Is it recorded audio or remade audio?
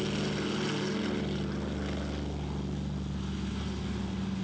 recorded